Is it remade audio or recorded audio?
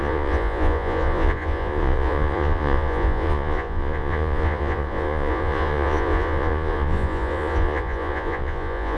remade